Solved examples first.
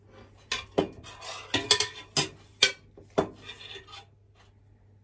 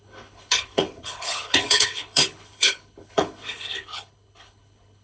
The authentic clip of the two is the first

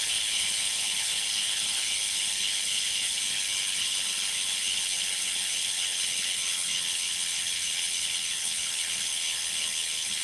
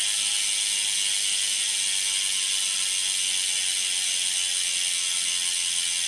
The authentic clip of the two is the second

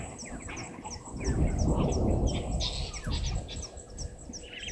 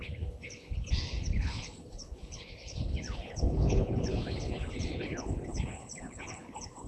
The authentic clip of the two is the first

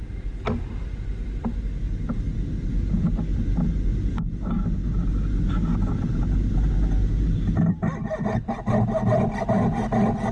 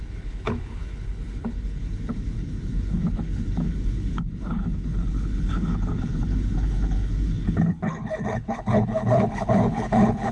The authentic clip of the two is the first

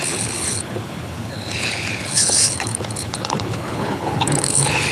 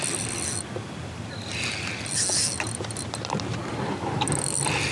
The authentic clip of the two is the second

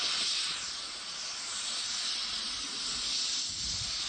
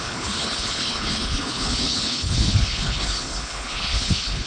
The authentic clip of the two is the first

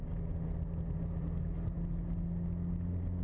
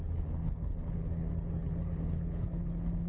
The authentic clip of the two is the first